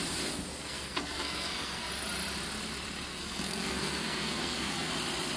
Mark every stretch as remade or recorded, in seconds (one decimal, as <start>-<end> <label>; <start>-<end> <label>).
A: 0.0-0.6 recorded; 0.6-1.9 remade; 1.9-3.1 recorded; 3.1-4.9 remade; 4.9-5.4 recorded